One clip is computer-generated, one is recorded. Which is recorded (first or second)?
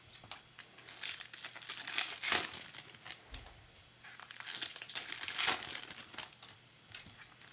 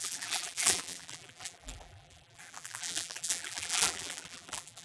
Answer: first